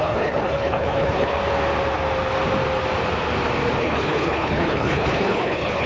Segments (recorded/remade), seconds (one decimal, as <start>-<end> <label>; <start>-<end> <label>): 0.0-1.4 remade; 1.4-3.8 recorded; 3.8-5.9 remade